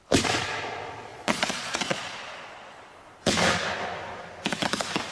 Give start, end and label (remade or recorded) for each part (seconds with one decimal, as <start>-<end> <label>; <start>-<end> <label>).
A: 0.0-1.1 recorded; 1.1-2.9 remade; 2.9-5.1 recorded